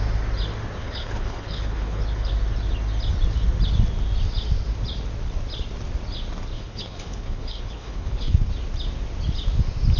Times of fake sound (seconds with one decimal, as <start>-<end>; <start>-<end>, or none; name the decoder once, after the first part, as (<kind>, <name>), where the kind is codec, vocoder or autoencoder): 0.8-2.3 (codec, HILCodec); 6.5-8.5